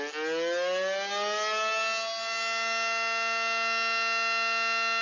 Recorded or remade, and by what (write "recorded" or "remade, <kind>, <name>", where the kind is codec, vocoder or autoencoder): recorded